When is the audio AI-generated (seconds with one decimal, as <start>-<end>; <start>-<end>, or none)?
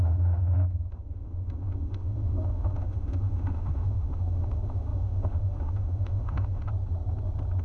0.0-6.7